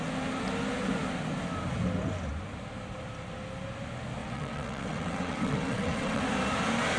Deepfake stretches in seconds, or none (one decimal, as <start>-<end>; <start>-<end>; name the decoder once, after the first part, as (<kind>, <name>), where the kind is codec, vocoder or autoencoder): 4.2-6.2 (vocoder, WaveNeXt)